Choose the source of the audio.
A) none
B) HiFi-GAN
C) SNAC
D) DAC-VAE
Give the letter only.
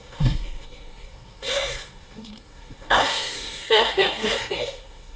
C